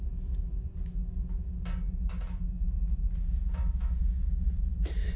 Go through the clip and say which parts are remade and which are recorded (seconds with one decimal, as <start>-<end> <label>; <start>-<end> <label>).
0.0-0.9 remade; 0.9-4.0 recorded; 4.0-5.2 remade